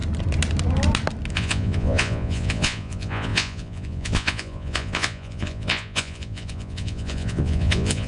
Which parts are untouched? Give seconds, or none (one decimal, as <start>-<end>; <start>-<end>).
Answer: 0.0-1.3